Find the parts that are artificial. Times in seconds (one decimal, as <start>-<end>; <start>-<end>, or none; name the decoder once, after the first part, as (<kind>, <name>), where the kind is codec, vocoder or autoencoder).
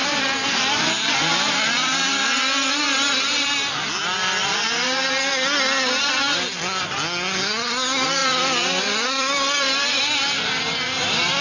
0.0-1.7 (vocoder, BigVGAN v2); 8.2-10.6